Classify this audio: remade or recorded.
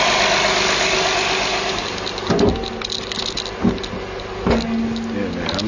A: recorded